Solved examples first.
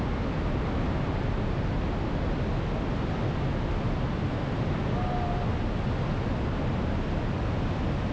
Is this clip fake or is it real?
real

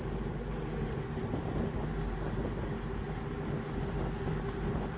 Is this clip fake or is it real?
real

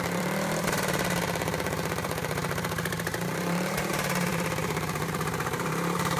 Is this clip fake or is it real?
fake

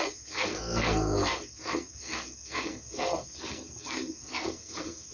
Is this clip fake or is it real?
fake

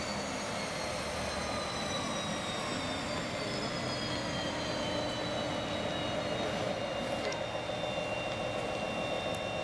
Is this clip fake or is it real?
real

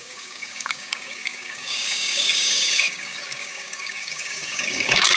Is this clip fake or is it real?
fake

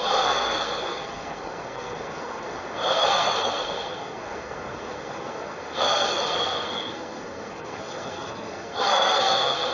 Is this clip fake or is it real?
fake